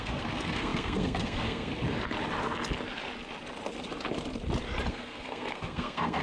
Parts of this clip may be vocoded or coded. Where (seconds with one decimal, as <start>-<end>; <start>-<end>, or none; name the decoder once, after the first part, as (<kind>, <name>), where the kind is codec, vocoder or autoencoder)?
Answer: 0.0-1.7 (codec, SNAC); 4.9-6.2